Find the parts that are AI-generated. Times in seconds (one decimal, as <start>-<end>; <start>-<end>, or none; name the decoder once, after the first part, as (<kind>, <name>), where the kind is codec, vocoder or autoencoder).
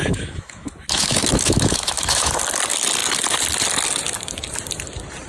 0.0-2.3 (autoencoder, DAC-VAE)